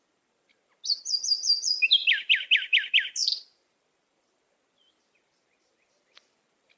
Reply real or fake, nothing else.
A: real